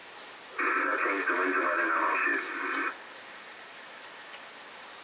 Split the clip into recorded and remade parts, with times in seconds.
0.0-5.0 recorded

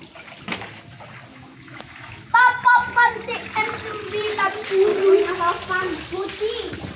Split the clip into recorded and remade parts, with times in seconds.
0.0-1.3 recorded; 1.3-3.1 remade; 3.1-4.9 recorded; 4.9-5.4 remade; 5.4-7.0 recorded

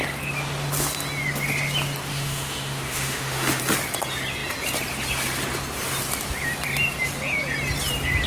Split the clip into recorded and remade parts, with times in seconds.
0.0-2.1 recorded; 2.1-3.6 remade; 3.6-8.3 recorded

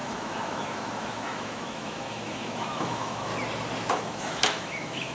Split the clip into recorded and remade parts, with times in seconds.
0.0-3.3 remade; 3.3-3.9 recorded; 3.9-5.1 remade